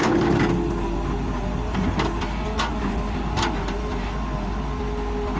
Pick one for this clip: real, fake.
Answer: real